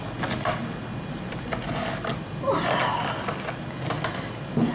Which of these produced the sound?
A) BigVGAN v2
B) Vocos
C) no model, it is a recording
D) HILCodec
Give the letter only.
C